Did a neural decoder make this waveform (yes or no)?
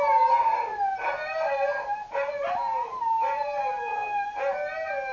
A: no